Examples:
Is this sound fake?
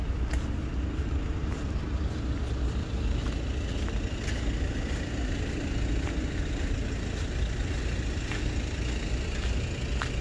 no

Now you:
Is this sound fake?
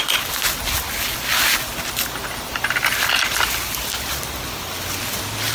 no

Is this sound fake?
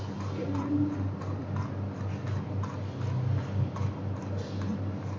no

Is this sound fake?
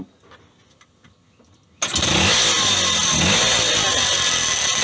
no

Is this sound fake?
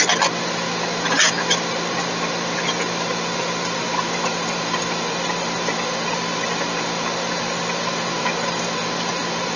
no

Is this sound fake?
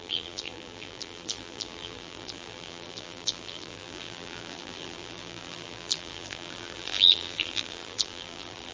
yes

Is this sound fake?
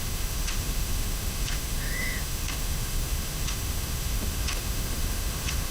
yes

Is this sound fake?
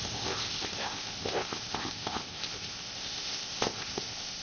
yes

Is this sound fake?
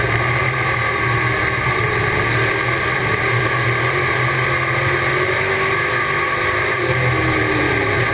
no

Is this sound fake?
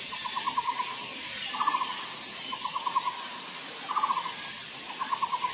no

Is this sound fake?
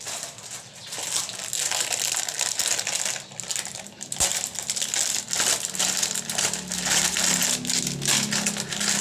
no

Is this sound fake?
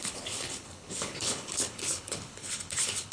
yes